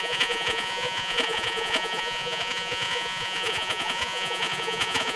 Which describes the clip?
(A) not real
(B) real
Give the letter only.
A